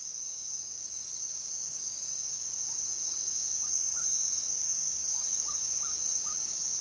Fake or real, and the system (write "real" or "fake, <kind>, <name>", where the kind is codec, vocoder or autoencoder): fake, codec, DAC